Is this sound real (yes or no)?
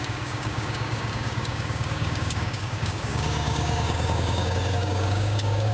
no